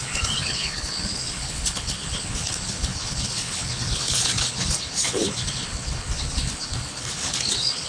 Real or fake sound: fake